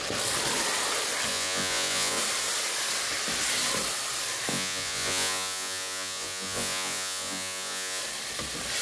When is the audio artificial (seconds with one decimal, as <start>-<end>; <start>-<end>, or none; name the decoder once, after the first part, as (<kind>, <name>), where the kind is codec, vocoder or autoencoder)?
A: 1.3-2.2 (vocoder, Vocos); 4.5-8.0